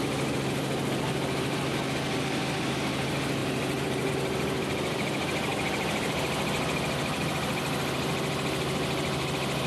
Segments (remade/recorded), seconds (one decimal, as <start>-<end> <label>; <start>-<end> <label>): 0.0-3.4 recorded; 3.4-4.1 remade; 4.1-5.5 recorded; 5.5-6.1 remade; 6.1-9.7 recorded